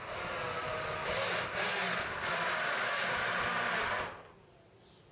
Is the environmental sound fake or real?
real